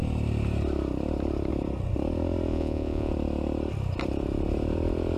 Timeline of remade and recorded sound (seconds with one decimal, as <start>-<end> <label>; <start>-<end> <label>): 0.0-2.5 recorded; 2.5-3.1 remade; 3.1-5.2 recorded